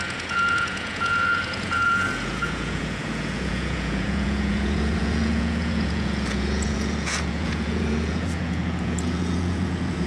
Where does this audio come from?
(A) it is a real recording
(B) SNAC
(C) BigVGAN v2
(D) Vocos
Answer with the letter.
D